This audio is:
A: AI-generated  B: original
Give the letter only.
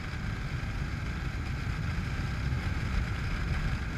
B